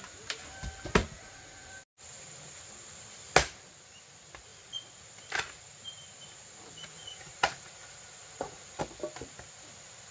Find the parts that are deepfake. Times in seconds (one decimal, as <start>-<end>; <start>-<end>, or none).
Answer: 1.0-1.7; 6.9-8.8